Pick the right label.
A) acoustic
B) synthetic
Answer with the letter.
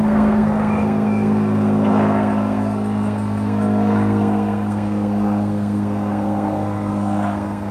B